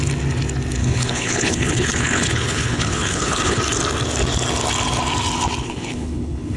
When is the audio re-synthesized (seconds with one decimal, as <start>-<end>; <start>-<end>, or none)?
0.8-3.6; 5.6-6.6